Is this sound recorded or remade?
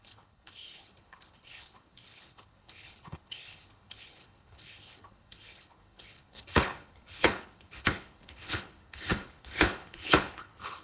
remade